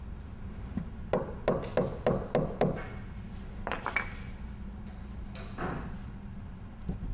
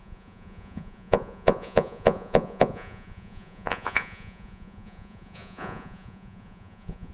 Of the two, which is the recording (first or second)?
first